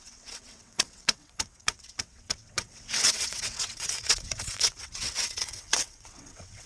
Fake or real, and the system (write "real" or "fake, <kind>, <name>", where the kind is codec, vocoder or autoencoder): fake, vocoder, WaveNeXt